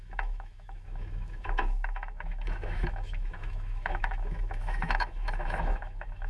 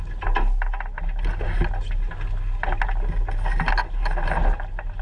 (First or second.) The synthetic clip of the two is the first